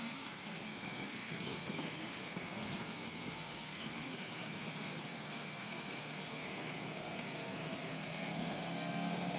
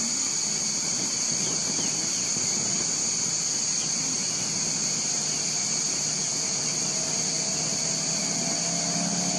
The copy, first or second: first